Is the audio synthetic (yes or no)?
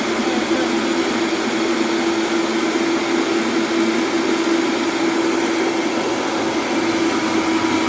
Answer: no